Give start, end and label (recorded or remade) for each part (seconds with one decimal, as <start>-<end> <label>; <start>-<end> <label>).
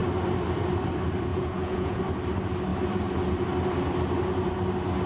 0.0-1.3 recorded; 1.3-2.0 remade; 2.0-5.1 recorded